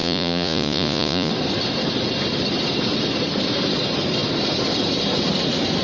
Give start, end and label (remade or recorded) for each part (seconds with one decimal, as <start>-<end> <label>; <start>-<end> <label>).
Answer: 0.0-1.3 remade; 1.3-5.8 recorded